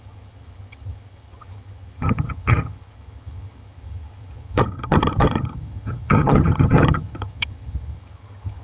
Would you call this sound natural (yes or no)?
no